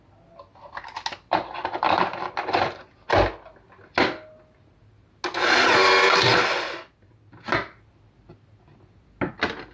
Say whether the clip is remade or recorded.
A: recorded